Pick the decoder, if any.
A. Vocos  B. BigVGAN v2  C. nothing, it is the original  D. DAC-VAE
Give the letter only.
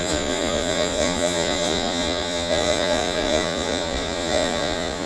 A